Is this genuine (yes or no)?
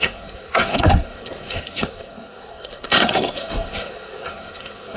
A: no